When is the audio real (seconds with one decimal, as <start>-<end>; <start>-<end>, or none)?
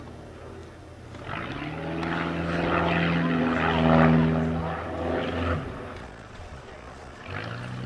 0.0-6.0; 7.3-7.9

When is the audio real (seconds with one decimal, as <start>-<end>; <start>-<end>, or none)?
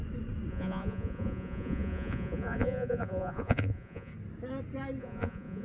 0.0-0.5; 4.1-5.0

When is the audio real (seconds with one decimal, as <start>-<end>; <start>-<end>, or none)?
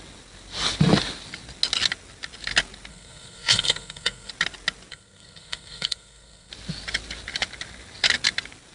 0.0-2.9; 4.3-4.9; 6.5-8.7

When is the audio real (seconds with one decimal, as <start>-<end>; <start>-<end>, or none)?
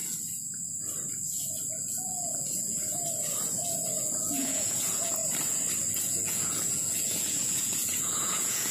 0.0-1.7; 2.8-4.0; 5.2-5.9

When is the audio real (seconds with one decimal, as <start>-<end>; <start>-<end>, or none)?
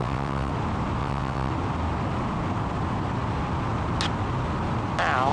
0.5-1.0; 1.5-5.3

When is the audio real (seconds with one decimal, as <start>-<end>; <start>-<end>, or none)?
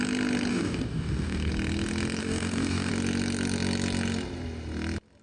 0.0-0.5; 1.5-2.2; 2.9-5.2